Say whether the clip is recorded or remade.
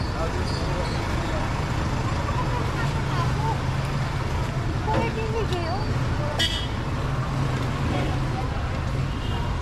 recorded